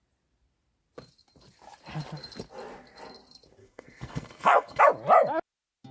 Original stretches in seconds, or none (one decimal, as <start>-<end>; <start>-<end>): 0.0-3.6; 4.8-5.9